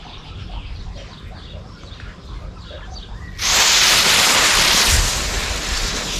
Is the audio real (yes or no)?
yes